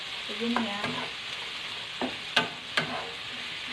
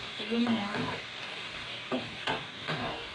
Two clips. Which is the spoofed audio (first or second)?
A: second